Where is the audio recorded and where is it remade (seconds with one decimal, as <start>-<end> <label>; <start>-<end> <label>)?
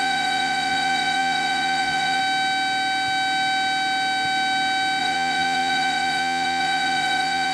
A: 0.0-2.2 remade; 2.2-5.0 recorded; 5.0-7.5 remade